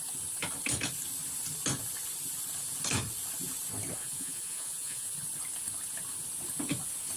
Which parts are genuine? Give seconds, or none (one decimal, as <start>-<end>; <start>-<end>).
0.0-4.0; 5.1-7.2